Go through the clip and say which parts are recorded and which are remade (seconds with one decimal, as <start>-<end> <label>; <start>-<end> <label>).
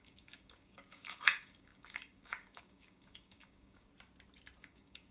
0.0-3.9 remade; 3.9-4.6 recorded; 4.6-5.1 remade